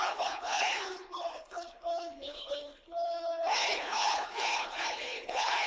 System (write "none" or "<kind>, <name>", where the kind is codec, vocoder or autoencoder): codec, HILCodec